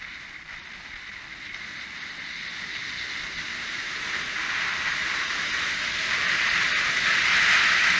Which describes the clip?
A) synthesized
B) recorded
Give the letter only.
B